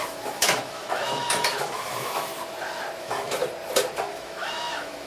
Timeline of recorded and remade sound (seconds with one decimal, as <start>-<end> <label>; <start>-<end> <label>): 0.0-2.3 remade; 2.3-3.0 recorded; 3.0-3.4 remade; 3.4-4.0 recorded; 4.0-5.1 remade